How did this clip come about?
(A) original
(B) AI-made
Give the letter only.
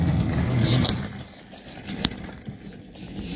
A